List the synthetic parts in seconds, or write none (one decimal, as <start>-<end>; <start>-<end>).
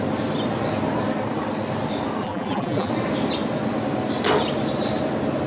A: 2.2-2.9